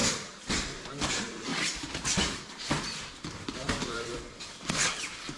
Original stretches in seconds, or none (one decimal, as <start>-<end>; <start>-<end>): 0.9-1.5; 4.7-5.4